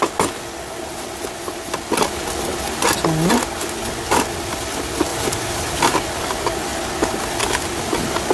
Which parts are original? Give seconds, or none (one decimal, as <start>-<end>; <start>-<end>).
0.0-5.1; 5.8-8.3